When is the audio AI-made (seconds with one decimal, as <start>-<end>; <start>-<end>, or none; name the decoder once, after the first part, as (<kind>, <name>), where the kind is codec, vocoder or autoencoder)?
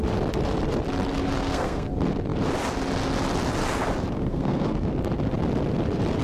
1.4-1.9 (codec, SNAC); 4.3-4.9